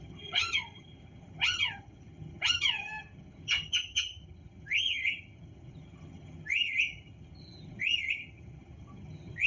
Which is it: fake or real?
fake